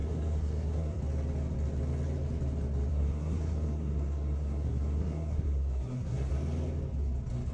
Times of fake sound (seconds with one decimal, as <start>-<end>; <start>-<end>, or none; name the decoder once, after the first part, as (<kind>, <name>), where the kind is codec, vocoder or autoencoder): 0.0-1.0 (codec, SNAC); 2.9-6.3